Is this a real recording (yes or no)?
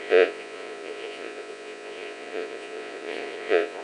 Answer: no